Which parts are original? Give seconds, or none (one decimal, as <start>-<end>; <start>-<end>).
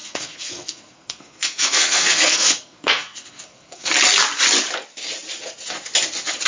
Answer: 3.9-6.5